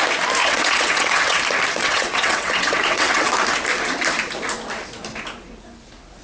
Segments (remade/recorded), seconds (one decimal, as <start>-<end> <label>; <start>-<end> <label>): 0.0-0.4 recorded; 0.4-1.4 remade; 1.4-1.8 recorded; 1.8-3.3 remade; 3.3-6.2 recorded